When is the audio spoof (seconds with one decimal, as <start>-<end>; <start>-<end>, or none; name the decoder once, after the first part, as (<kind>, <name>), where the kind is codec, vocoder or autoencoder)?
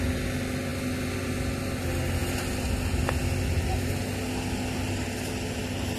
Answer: none